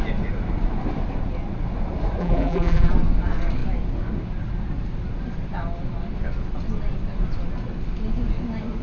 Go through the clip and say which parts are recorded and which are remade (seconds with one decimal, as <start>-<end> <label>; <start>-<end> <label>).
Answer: 0.0-2.2 recorded; 2.2-2.9 remade; 2.9-8.8 recorded